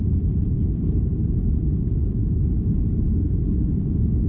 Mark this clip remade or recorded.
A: remade